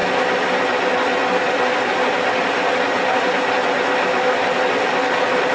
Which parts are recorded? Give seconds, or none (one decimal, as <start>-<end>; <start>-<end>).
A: 0.0-5.5